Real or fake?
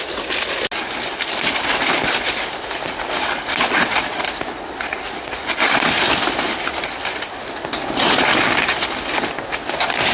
real